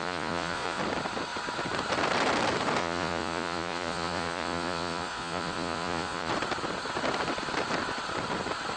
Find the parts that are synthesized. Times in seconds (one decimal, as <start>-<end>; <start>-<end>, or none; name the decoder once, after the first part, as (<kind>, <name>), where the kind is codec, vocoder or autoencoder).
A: 0.0-0.8 (vocoder, Vocos); 2.8-6.3